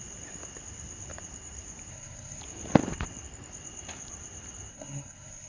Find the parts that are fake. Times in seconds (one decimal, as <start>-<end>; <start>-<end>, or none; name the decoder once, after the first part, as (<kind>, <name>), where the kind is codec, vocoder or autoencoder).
1.9-2.4 (codec, SNAC); 4.7-5.5